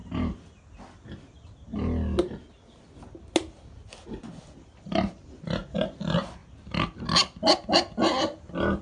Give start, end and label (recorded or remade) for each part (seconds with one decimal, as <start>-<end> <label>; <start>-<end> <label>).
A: 0.0-8.8 recorded